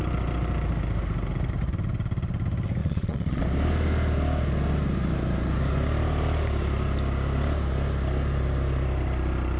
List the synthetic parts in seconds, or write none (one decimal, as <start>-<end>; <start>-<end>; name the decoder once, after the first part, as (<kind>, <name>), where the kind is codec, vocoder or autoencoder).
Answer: 2.8-3.4 (vocoder, Vocos)